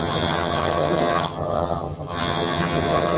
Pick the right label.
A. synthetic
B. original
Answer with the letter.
A